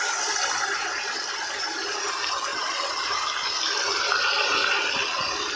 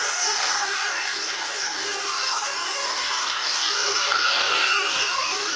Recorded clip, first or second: first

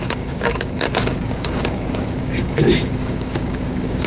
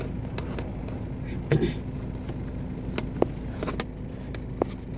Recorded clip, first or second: second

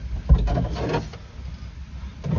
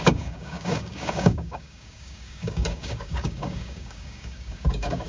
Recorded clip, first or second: first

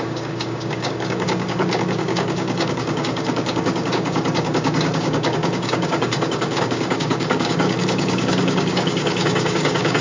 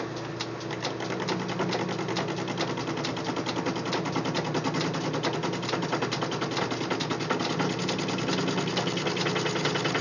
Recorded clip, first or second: second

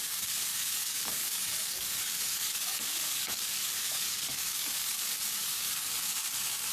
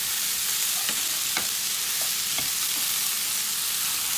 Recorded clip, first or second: second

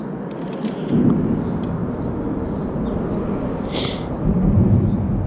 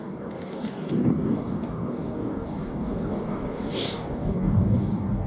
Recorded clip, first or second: first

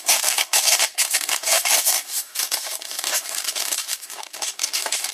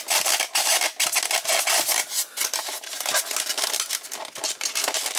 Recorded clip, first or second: second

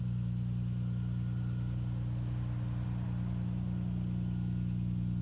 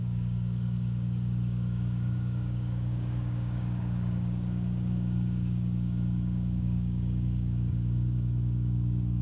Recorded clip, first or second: first